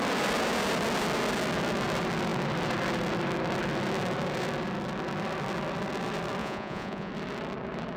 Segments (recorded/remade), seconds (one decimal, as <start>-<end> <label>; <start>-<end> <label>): 0.0-6.4 recorded; 6.4-7.1 remade; 7.1-8.0 recorded